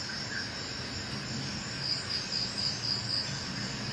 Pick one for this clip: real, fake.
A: real